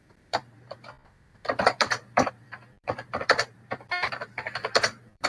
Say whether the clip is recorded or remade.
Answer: remade